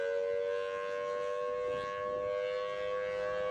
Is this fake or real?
real